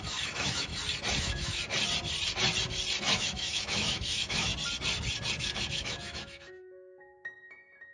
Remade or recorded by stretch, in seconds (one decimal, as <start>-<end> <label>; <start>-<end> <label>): 0.0-0.7 remade; 0.7-1.2 recorded; 1.2-1.6 remade; 1.6-3.0 recorded; 3.0-4.5 remade; 4.5-5.4 recorded; 5.4-7.9 remade